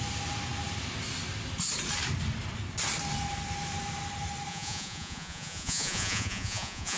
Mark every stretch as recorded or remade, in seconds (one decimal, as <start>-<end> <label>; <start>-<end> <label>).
0.0-4.5 recorded; 4.5-7.0 remade